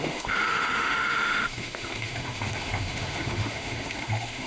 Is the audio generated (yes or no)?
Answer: yes